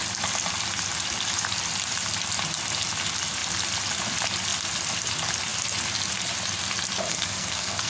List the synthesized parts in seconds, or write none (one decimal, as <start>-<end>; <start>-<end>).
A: 7.1-7.9